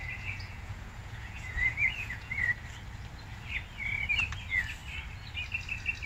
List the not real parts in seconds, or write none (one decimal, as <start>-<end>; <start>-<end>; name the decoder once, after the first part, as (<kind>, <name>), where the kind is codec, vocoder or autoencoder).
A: 0.0-2.4 (vocoder, Vocos)